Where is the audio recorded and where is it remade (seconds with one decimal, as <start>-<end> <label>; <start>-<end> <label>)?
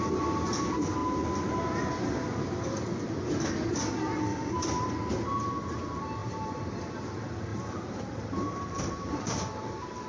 0.0-4.3 recorded; 4.3-4.9 remade; 4.9-6.2 recorded; 6.2-6.8 remade; 6.8-7.5 recorded; 7.5-9.6 remade; 9.6-10.1 recorded